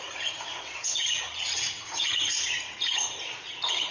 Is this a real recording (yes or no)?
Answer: no